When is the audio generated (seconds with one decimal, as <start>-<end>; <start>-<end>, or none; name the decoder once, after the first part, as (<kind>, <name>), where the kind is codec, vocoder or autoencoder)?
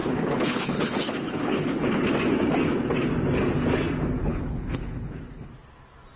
0.0-2.1 (codec, HILCodec); 4.2-5.5